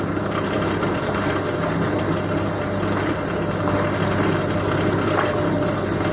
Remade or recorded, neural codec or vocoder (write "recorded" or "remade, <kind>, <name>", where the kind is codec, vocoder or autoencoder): recorded